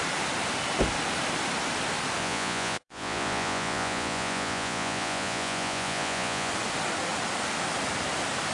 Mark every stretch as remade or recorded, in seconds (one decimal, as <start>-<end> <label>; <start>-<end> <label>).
0.0-2.2 recorded; 2.2-6.5 remade; 6.5-8.5 recorded